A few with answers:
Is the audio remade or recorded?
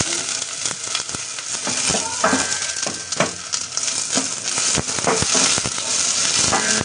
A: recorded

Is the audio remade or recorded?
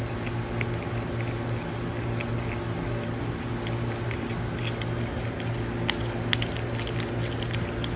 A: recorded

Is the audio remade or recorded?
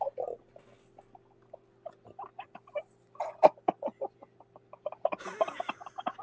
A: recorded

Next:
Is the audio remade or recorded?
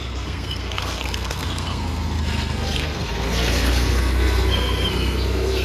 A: remade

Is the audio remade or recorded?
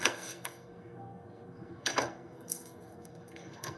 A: remade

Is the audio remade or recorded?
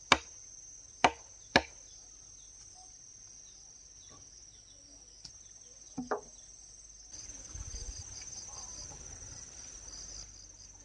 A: recorded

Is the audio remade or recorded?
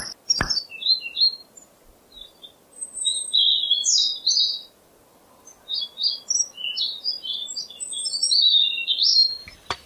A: recorded